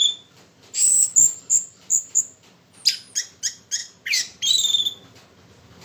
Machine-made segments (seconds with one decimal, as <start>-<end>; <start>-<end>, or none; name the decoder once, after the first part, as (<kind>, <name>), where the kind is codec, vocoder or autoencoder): 0.0-2.2 (vocoder, BigVGAN v2); 3.8-4.8